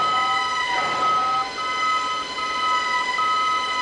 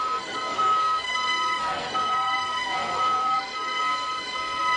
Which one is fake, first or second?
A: second